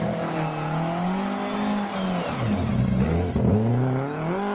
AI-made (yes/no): no